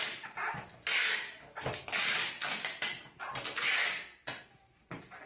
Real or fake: real